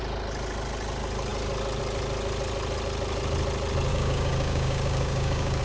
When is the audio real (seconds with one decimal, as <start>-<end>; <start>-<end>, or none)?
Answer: 0.0-3.9